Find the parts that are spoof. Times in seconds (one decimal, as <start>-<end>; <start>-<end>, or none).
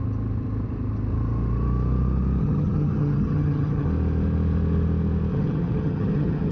2.4-3.9; 5.3-6.5